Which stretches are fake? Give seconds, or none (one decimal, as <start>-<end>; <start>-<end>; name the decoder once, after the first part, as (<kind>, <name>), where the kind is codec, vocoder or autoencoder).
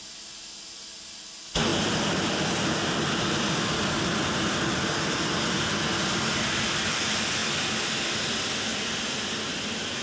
none